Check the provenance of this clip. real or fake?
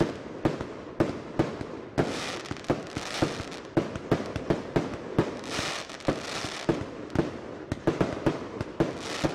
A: real